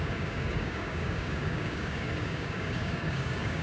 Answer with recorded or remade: remade